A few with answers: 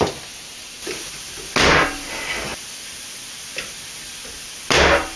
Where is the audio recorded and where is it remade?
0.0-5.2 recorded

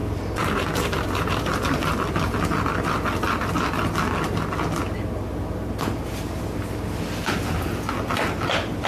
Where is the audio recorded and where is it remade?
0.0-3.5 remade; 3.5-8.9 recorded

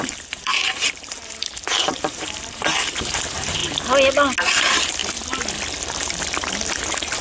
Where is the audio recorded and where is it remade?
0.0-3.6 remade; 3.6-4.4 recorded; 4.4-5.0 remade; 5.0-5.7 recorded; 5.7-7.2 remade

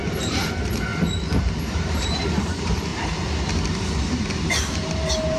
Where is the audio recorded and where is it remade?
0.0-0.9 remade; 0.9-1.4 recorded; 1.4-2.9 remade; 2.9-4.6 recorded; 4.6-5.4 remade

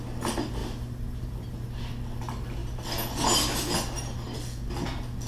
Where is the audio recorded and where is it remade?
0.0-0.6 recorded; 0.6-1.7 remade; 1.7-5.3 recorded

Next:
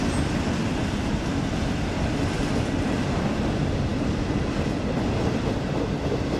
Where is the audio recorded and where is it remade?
0.0-6.4 recorded